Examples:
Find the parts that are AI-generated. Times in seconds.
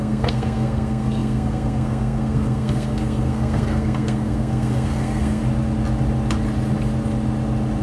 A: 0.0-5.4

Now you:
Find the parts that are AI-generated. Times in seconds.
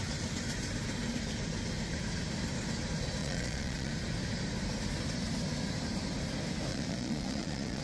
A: 3.2-3.9; 6.7-7.8